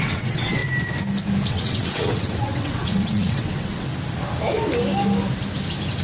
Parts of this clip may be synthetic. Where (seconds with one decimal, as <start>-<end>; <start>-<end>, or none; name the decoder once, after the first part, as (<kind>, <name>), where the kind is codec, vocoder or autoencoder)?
0.0-0.6 (vocoder, WaveNeXt); 1.5-3.9